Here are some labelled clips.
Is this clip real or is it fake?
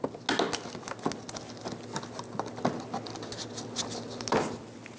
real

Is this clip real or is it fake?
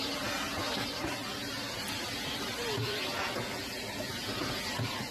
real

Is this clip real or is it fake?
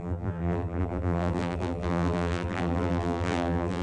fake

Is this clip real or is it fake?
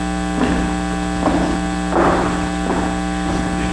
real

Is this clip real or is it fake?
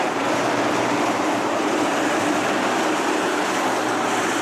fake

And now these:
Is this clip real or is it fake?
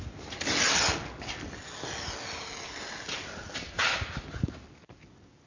real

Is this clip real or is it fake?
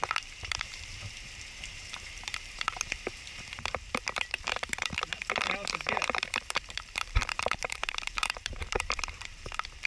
fake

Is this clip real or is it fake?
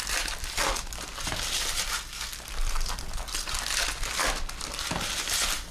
fake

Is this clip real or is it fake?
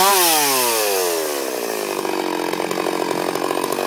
real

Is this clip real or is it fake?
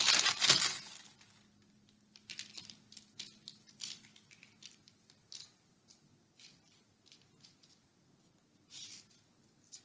real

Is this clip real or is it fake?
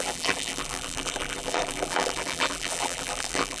fake